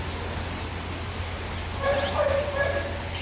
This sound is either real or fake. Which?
real